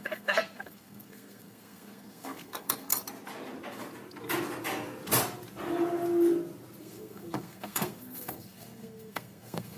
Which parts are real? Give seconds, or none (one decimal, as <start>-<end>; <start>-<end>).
2.9-6.8